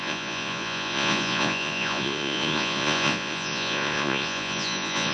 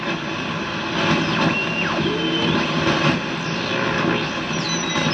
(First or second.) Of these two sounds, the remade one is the first